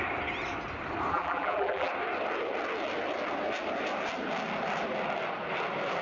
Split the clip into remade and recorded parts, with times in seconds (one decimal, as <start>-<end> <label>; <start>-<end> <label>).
0.0-1.1 recorded; 1.1-1.9 remade; 1.9-6.0 recorded